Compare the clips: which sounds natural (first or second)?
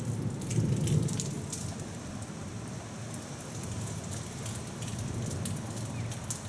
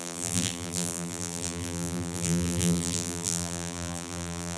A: first